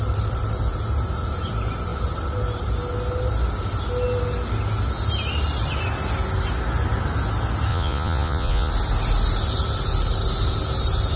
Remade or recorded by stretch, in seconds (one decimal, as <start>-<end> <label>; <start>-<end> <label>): 0.0-7.7 recorded; 7.7-8.7 remade; 8.7-11.2 recorded